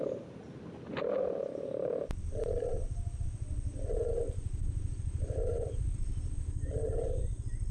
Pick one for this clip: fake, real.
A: real